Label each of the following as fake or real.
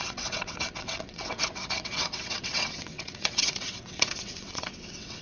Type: fake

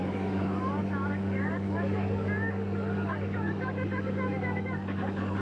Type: fake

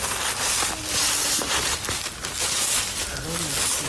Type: real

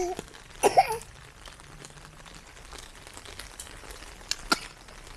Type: real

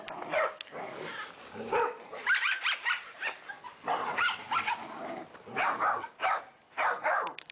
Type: real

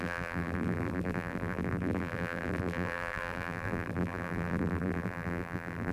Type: fake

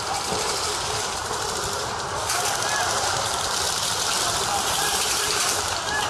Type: fake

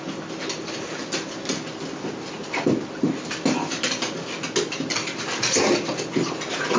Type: real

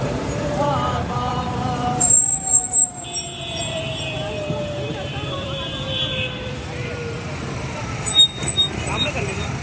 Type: fake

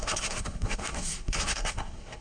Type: fake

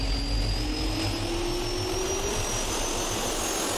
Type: real